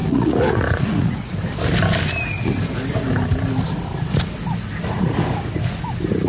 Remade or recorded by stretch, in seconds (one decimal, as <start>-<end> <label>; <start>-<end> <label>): 0.0-1.3 remade; 1.3-6.3 recorded